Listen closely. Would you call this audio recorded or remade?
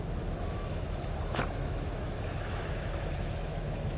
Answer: remade